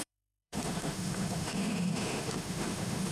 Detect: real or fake fake